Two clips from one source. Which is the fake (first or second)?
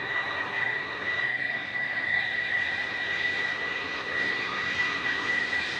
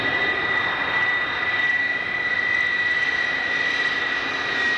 first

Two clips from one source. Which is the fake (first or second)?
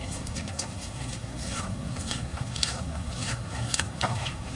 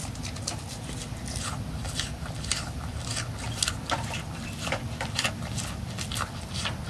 first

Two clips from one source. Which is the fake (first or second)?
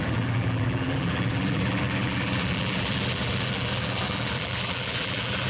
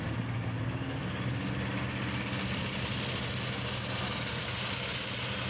first